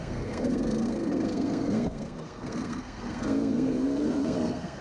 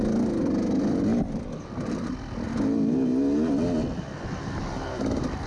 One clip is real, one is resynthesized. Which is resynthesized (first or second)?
first